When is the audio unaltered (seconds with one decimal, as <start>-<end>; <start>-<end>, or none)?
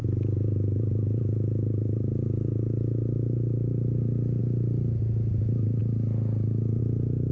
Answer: 0.0-7.3